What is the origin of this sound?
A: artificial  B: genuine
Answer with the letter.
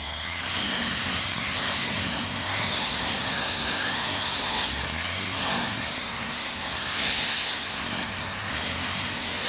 A